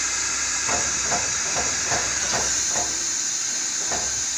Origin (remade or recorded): recorded